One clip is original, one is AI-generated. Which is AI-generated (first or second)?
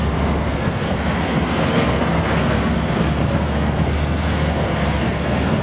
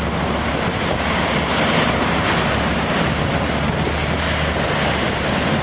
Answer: first